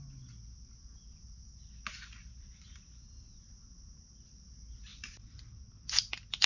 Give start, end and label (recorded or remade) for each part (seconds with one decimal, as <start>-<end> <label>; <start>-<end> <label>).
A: 0.0-2.3 recorded; 2.3-3.1 remade; 3.1-4.9 recorded; 4.9-5.6 remade; 5.6-6.5 recorded